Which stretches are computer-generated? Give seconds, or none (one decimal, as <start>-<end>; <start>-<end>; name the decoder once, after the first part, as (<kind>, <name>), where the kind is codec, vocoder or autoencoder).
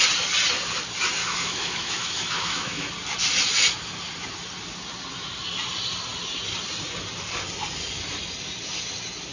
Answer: 1.2-2.9 (autoencoder, DAC-VAE)